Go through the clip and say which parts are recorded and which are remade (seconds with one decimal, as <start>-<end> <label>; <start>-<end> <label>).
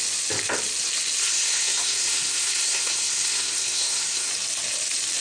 0.0-1.2 recorded; 1.2-4.3 remade; 4.3-5.2 recorded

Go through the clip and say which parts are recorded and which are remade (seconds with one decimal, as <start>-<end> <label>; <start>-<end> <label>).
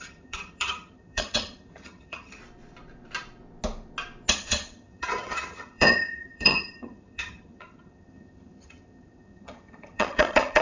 0.0-2.4 remade; 2.4-4.3 recorded; 4.3-10.6 remade